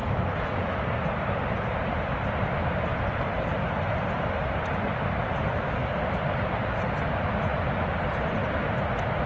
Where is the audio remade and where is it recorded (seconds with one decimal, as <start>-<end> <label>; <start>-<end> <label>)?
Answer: 0.0-0.8 remade; 0.8-9.3 recorded